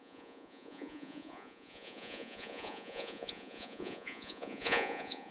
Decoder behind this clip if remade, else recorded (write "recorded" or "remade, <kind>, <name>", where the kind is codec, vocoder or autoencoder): remade, vocoder, Vocos